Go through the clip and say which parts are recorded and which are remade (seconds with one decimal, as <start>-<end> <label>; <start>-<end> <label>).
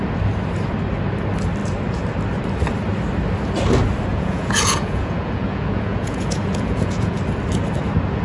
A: 0.0-4.1 recorded; 4.1-7.2 remade; 7.2-8.2 recorded